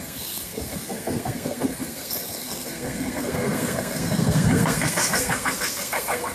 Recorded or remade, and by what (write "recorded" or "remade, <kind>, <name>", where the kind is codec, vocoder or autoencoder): remade, codec, SNAC